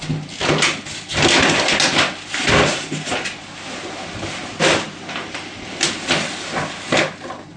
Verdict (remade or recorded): recorded